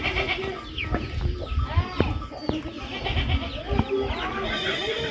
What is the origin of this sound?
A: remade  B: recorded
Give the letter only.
B